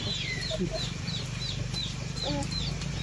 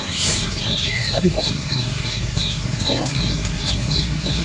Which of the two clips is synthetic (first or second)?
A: second